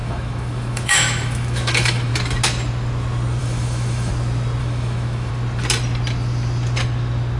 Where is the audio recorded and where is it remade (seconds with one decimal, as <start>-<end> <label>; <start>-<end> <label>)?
0.0-2.1 remade; 2.1-3.4 recorded; 3.4-4.1 remade; 4.1-4.6 recorded; 4.6-5.3 remade; 5.3-7.4 recorded